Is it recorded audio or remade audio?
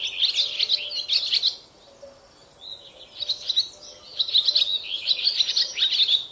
recorded